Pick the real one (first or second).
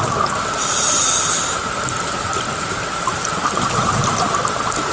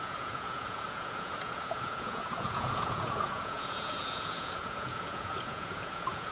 first